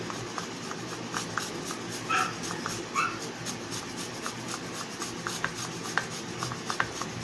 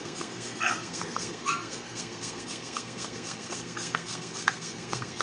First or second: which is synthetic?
second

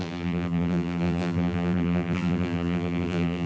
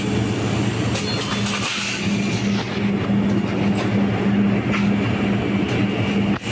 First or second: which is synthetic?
first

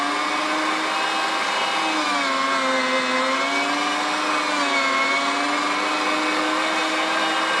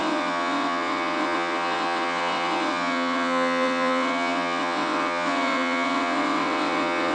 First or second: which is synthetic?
second